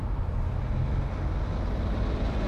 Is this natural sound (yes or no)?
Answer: yes